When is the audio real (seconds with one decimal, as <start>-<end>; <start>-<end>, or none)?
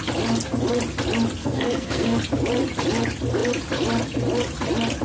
0.0-1.4; 2.2-5.0